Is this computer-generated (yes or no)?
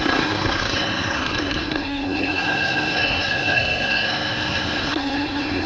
yes